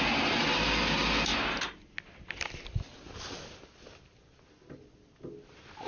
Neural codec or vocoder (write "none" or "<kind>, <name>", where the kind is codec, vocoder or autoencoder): none